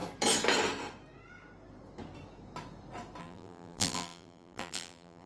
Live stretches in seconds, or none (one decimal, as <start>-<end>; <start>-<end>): 0.0-3.2